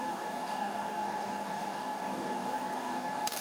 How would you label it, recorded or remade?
remade